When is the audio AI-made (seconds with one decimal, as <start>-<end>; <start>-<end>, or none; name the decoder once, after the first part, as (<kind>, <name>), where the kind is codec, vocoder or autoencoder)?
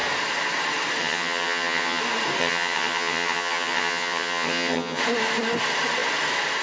1.0-2.0 (vocoder, HiFi-GAN); 2.4-5.0